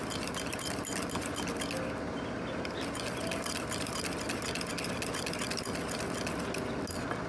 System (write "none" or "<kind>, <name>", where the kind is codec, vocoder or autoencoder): none